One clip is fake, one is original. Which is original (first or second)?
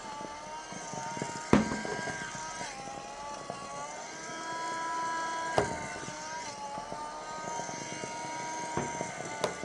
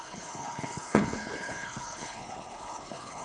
first